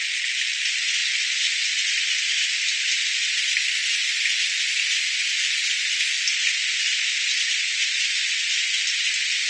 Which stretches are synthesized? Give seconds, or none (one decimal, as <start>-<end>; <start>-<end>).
none